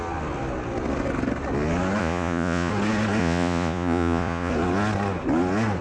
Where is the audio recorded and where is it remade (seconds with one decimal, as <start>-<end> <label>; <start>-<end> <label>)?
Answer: 0.0-2.0 recorded; 2.0-2.7 remade; 2.7-3.2 recorded; 3.2-4.5 remade; 4.5-5.8 recorded